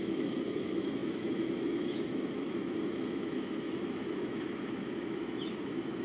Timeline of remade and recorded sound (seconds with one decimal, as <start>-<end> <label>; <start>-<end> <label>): 0.0-6.0 remade